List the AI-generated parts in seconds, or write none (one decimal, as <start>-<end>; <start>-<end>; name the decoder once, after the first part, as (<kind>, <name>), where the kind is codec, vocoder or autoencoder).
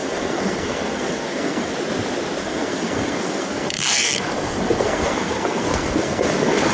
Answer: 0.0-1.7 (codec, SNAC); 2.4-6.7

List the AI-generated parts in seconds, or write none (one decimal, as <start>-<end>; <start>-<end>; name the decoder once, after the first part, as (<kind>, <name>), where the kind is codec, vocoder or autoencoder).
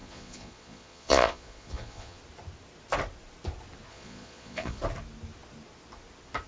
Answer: 0.0-2.2 (vocoder, Vocos); 3.9-4.8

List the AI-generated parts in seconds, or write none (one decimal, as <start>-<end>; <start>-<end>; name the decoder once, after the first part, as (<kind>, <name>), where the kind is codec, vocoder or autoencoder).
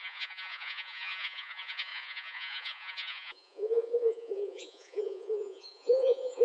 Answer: 0.0-6.4 (vocoder, Vocos)